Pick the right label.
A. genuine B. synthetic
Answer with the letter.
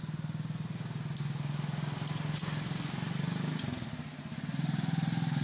A